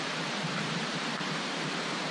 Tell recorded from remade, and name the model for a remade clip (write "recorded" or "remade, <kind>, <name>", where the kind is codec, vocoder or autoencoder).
remade, vocoder, BigVGAN v2